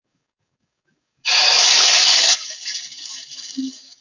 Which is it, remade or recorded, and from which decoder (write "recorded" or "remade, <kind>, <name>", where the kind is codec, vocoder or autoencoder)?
remade, codec, DAC